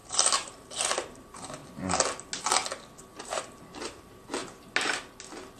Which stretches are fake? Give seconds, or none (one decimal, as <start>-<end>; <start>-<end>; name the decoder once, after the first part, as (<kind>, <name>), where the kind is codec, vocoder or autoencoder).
0.0-1.6 (vocoder, BigVGAN v2); 3.0-4.4